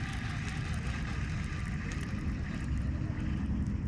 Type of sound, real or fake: real